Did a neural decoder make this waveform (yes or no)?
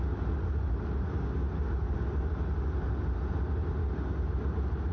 no